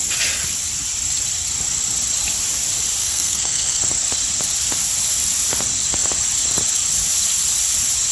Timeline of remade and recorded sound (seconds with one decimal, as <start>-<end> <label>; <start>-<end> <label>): 0.0-3.0 recorded; 3.0-3.8 remade; 3.8-8.1 recorded